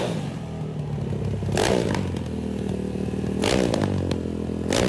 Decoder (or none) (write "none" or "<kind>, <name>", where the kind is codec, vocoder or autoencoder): none